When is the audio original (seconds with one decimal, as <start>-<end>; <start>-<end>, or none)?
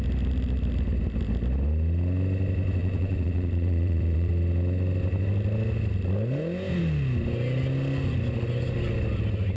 0.0-2.8; 4.3-9.6